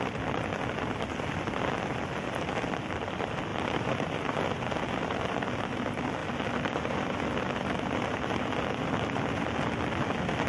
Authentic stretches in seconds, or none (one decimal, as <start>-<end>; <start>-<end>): 0.0-3.5; 4.0-6.2; 8.6-10.5